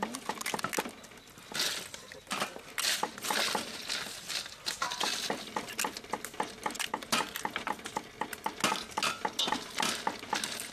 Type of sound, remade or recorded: recorded